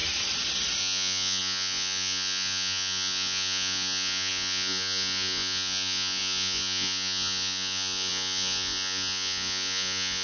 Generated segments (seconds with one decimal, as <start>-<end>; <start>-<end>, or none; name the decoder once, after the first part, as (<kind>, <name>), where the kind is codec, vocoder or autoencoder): 0.8-10.2 (vocoder, Vocos)